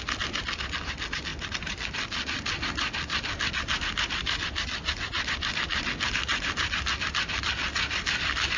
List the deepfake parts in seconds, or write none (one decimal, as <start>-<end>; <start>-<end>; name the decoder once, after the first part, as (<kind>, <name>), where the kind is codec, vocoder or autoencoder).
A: none